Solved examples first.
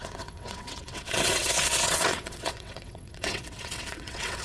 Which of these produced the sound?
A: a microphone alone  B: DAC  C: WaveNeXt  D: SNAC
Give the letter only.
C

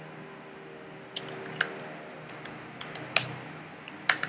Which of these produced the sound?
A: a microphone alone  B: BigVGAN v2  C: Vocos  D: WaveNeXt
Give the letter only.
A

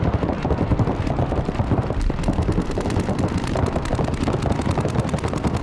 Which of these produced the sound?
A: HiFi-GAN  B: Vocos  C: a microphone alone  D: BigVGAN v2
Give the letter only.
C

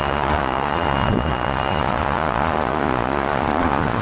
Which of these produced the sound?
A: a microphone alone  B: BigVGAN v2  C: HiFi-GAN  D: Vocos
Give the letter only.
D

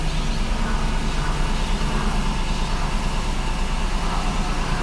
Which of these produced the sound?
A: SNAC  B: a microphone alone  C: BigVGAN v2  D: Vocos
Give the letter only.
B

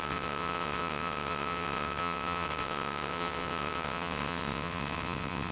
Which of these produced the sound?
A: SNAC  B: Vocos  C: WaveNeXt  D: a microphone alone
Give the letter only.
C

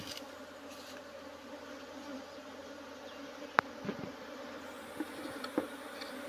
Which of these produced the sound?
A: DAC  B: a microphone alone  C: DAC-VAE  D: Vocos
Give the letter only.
B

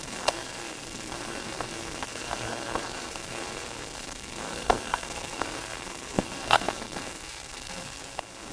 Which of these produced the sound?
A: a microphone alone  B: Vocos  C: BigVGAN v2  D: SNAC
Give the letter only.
D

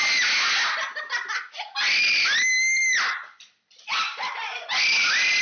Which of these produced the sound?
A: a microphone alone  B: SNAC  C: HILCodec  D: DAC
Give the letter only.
A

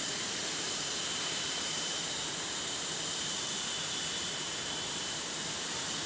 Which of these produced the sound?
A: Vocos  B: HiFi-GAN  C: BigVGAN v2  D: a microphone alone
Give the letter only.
C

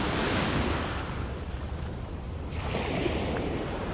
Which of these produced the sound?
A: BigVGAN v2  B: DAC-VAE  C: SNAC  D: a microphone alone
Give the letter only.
D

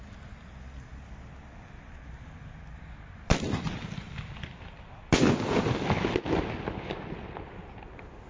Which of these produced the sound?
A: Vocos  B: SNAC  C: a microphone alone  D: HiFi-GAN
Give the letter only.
C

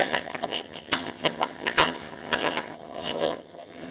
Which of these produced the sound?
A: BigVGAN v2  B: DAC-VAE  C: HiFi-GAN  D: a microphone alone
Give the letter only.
C